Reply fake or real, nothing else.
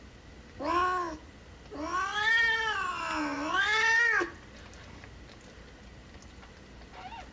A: real